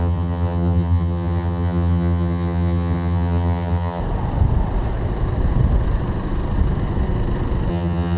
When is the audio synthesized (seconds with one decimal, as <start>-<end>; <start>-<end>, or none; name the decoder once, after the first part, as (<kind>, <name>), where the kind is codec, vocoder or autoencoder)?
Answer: 0.0-4.0 (vocoder, HiFi-GAN); 7.7-8.2